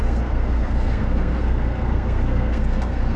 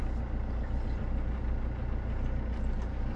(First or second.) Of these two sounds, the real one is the second